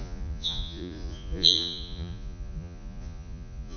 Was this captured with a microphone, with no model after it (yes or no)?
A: no